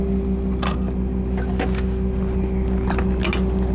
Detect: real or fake real